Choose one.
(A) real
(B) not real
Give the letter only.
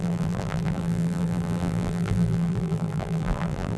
B